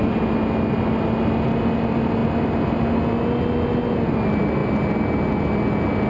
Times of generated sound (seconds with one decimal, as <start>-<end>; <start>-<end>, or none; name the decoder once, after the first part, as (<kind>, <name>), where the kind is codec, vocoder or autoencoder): none